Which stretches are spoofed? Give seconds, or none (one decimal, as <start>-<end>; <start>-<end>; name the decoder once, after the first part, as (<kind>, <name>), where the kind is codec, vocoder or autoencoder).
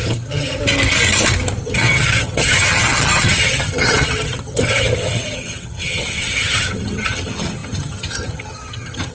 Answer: 0.0-0.6 (vocoder, HiFi-GAN); 1.6-9.1